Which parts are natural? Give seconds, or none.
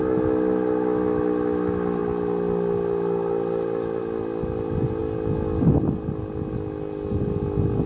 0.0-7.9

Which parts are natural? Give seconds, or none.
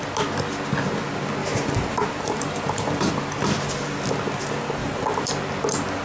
0.0-1.4; 3.1-4.8; 5.3-6.0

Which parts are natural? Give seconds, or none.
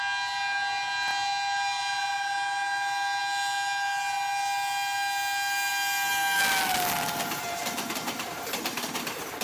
0.0-7.6; 8.2-9.4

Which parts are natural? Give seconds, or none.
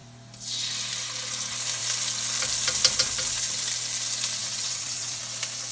0.0-4.4; 5.2-5.7